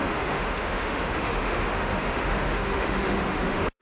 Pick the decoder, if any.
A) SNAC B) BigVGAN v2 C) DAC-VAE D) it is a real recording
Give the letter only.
C